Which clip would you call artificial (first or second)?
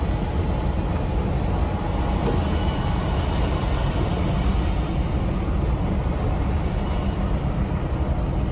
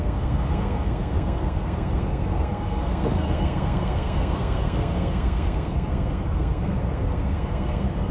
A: second